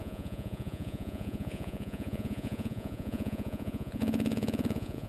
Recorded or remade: remade